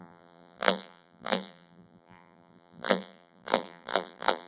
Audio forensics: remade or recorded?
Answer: remade